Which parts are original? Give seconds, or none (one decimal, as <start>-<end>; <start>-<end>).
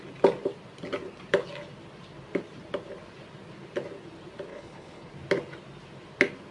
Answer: 0.0-4.5; 5.1-6.5